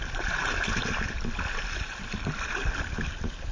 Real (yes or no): no